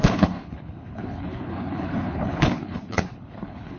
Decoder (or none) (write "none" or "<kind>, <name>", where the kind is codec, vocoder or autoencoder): codec, HILCodec